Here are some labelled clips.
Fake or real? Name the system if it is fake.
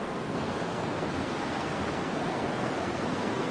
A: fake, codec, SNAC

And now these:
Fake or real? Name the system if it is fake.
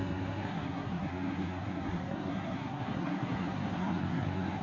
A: fake, codec, SNAC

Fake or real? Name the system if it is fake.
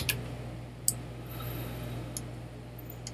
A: real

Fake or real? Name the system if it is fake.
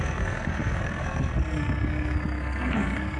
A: fake, codec, SNAC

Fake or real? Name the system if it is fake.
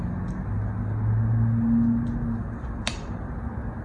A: real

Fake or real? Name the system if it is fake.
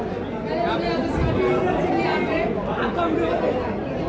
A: real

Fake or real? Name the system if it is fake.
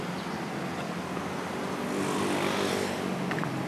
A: real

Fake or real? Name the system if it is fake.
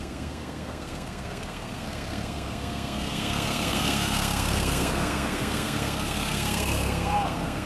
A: fake, codec, SNAC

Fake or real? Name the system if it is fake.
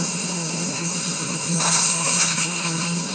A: fake, codec, SNAC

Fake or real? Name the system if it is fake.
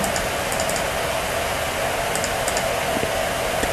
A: real